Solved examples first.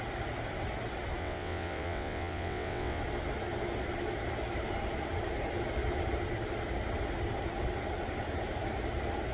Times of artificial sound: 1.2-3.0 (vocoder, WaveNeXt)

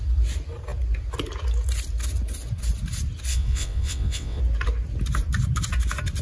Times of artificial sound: 3.3-4.4 (vocoder, WaveNeXt)

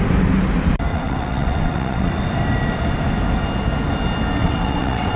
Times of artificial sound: 0.9-2.1 (vocoder, WaveNeXt); 4.4-5.2

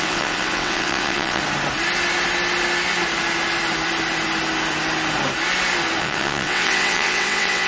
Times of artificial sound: 0.0-1.4 (vocoder, WaveNeXt); 6.0-7.7

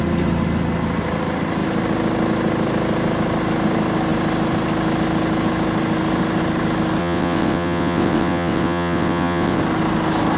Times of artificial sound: 7.0-9.6 (vocoder, WaveNeXt)

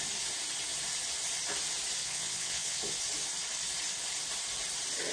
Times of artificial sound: 2.0-2.8 (vocoder, WaveNeXt)

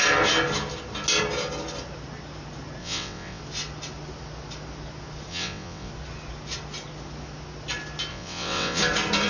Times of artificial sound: 2.8-3.4 (vocoder, WaveNeXt); 5.3-5.9; 8.1-8.8

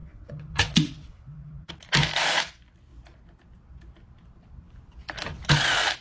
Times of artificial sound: 0.0-1.7 (vocoder, WaveNeXt)